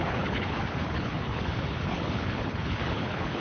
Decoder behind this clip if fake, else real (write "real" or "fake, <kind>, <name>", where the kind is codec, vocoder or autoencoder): fake, codec, HILCodec